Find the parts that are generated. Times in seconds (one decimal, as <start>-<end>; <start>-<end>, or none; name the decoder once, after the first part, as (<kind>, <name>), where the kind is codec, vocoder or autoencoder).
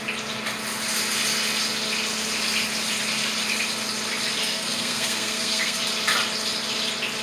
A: 4.4-5.8 (codec, SNAC)